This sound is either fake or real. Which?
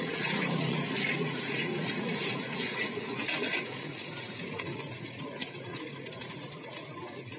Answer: fake